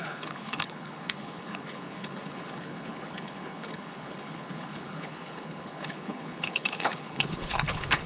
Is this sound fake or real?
fake